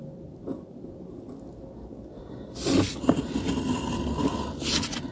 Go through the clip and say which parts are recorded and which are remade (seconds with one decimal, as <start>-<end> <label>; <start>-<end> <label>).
0.0-5.1 recorded